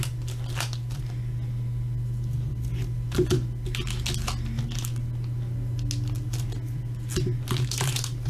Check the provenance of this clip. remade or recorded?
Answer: recorded